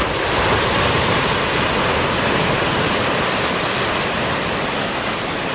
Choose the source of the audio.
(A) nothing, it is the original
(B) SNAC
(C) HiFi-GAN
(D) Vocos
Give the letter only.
A